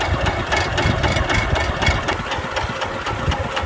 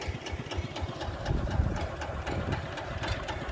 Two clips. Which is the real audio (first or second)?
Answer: first